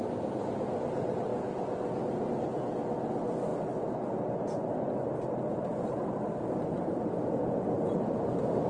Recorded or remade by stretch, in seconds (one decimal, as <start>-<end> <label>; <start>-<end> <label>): 0.0-8.7 recorded